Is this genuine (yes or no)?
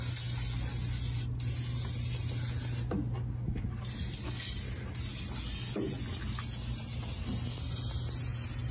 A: yes